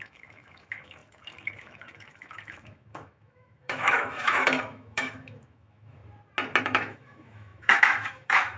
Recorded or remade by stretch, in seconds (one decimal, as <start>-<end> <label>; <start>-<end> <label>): 0.0-6.0 remade; 6.0-6.6 recorded; 6.6-8.6 remade